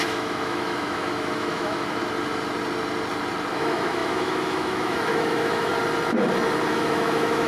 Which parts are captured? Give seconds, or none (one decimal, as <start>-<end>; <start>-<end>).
2.0-3.5; 5.7-6.7